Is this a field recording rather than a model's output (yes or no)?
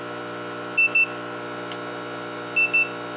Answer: yes